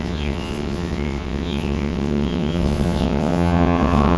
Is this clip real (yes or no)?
no